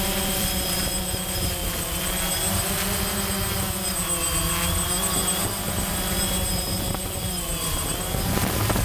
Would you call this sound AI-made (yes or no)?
yes